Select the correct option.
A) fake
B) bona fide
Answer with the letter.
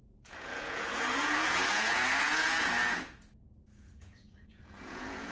A